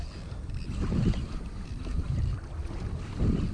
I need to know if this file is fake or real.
real